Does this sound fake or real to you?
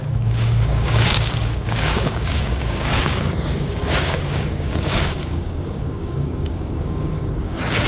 fake